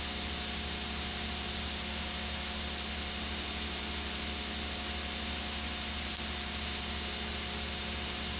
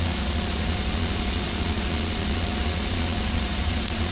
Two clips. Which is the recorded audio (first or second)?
first